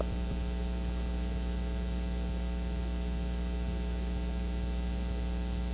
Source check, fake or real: real